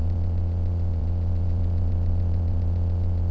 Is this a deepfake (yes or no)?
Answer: yes